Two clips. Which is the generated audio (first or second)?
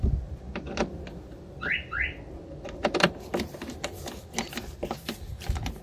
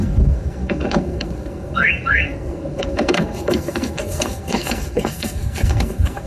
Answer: second